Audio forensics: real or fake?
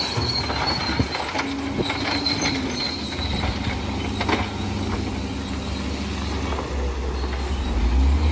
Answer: real